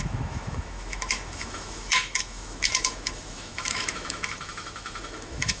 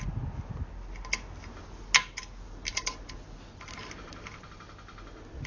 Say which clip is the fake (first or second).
first